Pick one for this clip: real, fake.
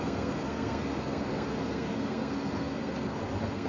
fake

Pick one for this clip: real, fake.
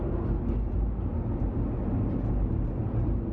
real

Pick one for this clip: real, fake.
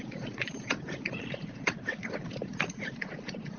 fake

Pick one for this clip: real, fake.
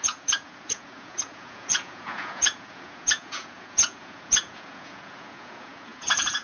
fake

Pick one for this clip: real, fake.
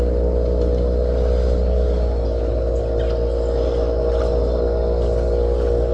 real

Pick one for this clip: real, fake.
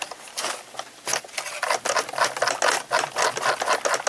real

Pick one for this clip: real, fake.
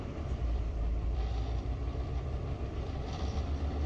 fake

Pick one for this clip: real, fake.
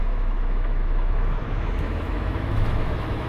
fake